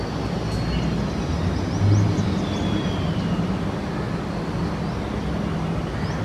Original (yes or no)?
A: yes